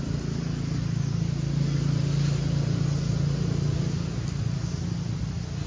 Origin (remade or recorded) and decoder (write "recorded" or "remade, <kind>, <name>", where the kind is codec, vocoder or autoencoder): recorded